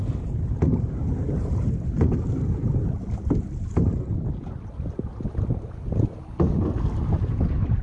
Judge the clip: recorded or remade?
recorded